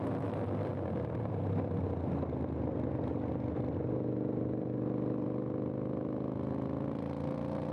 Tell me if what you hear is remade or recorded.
recorded